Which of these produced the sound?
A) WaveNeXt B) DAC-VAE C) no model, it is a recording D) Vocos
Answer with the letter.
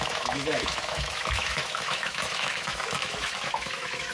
B